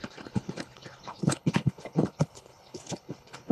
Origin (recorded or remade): remade